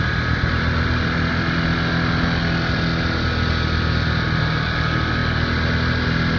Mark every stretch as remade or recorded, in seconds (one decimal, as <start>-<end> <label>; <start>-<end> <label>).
0.0-6.4 recorded